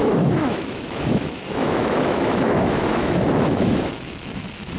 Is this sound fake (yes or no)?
yes